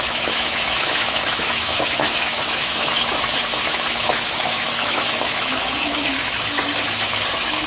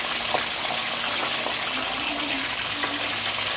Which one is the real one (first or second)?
second